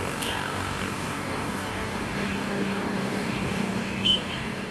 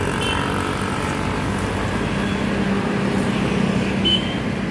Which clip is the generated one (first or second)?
first